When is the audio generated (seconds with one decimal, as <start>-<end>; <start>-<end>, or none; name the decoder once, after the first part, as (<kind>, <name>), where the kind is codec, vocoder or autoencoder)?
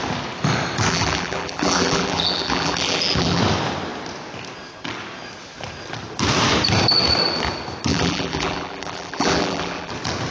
0.9-3.4 (vocoder, BigVGAN v2); 7.9-9.9